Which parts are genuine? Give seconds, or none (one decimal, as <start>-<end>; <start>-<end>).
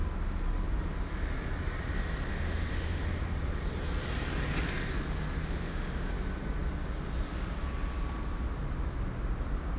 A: 0.0-2.3; 3.0-5.4; 6.1-9.8